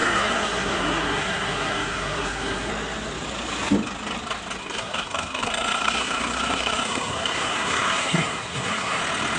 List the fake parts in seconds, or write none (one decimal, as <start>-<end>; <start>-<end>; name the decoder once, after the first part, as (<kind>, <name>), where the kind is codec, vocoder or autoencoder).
0.0-2.7 (codec, SNAC); 4.6-9.0